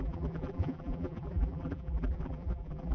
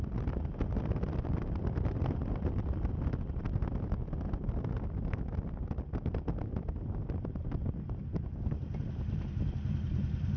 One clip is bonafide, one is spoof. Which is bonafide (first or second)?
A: second